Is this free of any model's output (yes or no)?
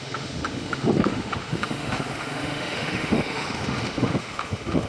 no